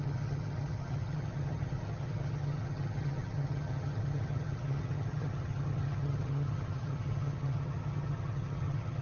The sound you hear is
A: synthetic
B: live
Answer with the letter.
A